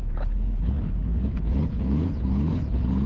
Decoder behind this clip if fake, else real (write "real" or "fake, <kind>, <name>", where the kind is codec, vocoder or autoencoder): fake, codec, HILCodec